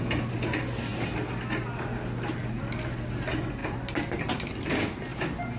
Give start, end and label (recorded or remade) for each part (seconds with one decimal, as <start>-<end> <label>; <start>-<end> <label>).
0.0-5.6 recorded